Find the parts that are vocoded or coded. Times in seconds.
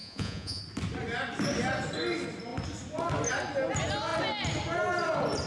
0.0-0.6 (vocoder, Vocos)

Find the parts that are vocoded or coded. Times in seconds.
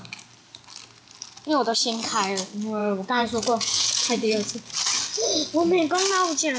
2.8-4.6 (vocoder, Vocos)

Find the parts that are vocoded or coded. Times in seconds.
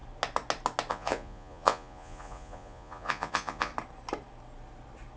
0.9-3.7 (vocoder, Vocos)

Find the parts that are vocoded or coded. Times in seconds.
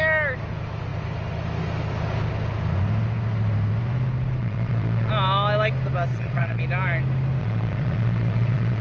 4.4-5.1 (vocoder, Vocos); 6.1-6.6; 7.4-8.8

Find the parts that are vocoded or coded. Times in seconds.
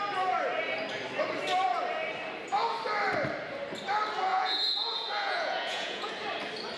4.3-6.1 (vocoder, Vocos)